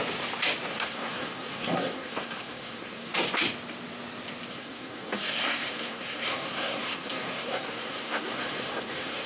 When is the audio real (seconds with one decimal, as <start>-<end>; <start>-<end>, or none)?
0.0-0.7; 3.1-4.5